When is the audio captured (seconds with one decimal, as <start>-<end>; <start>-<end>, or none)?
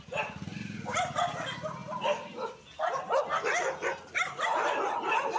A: 0.0-5.4